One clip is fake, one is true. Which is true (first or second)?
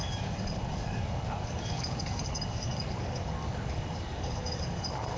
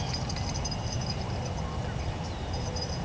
second